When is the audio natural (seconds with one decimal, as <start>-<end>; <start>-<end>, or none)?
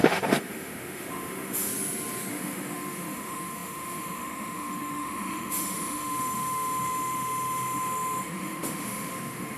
1.7-2.3